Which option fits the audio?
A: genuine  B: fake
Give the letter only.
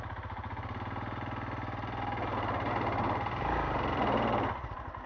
B